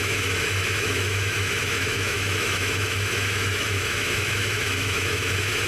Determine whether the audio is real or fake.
fake